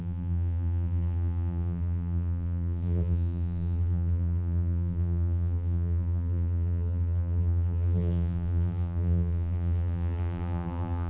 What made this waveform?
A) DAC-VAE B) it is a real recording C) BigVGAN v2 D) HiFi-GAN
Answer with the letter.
C